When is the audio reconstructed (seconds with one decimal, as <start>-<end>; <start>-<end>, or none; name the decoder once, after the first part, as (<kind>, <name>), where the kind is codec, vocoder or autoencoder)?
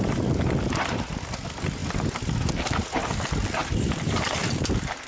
3.6-4.3 (vocoder, BigVGAN v2)